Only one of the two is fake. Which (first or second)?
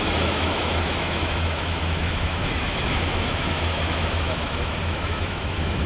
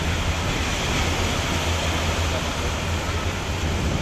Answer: first